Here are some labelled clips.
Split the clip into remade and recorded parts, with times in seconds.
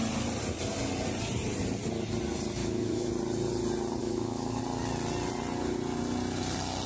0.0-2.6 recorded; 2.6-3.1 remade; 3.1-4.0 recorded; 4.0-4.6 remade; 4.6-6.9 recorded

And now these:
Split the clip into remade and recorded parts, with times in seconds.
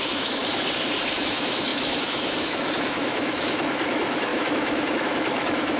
0.0-0.4 remade; 0.4-1.2 recorded; 1.2-5.8 remade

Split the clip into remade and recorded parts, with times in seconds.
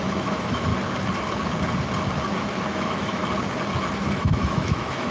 0.0-0.7 remade; 0.7-2.7 recorded; 2.7-3.2 remade; 3.2-4.2 recorded; 4.2-5.1 remade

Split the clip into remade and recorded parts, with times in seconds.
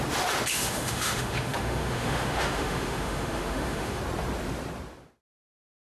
0.0-0.5 recorded; 0.5-4.0 remade; 4.0-5.9 recorded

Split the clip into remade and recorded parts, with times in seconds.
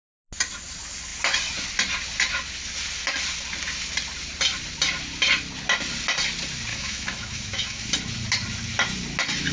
0.0-6.7 recorded; 6.7-7.8 remade; 7.8-9.5 recorded